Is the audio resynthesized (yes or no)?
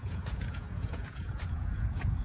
yes